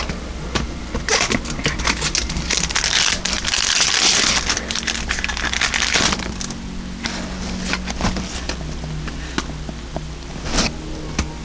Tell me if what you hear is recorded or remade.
recorded